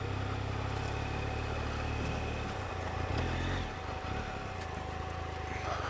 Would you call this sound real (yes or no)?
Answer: yes